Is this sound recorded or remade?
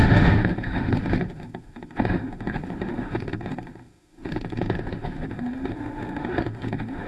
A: remade